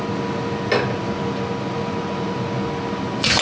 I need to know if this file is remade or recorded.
recorded